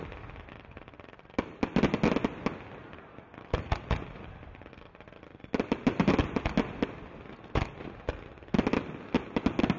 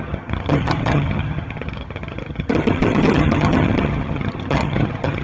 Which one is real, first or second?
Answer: first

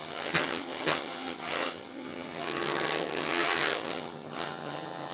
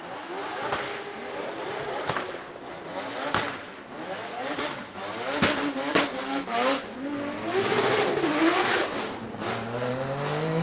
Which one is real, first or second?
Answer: second